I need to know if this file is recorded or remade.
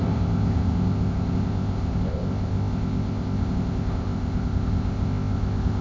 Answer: remade